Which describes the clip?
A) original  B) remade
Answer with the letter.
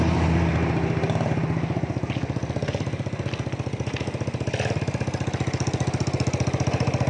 A